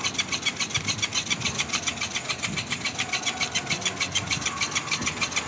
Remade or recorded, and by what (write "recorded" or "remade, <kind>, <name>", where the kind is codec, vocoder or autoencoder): recorded